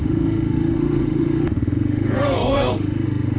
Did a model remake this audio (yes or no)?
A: yes